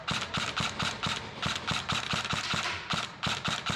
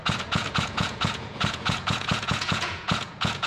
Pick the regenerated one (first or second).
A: second